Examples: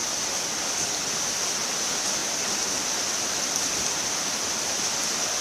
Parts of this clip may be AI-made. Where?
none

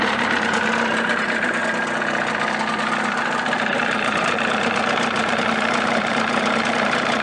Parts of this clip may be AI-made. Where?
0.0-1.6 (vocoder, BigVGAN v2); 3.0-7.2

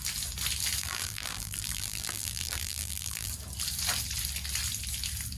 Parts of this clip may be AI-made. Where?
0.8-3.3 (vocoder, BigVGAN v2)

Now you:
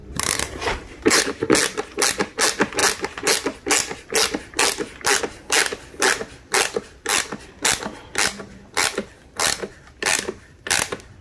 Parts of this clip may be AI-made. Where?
0.0-1.2 (vocoder, BigVGAN v2)